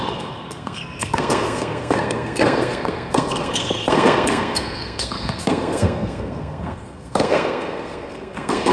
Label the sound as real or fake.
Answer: fake